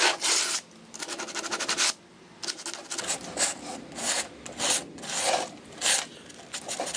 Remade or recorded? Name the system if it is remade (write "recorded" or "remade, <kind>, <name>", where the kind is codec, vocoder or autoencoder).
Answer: recorded